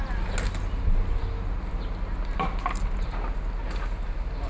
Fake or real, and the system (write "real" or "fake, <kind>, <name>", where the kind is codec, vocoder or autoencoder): real